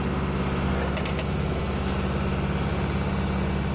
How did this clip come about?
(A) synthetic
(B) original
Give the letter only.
B